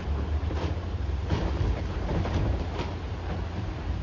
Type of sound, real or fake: fake